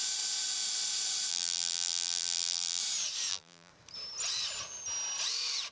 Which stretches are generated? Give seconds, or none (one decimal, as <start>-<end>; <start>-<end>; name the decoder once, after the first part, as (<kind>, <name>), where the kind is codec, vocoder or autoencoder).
1.3-2.8 (vocoder, BigVGAN v2); 3.3-3.7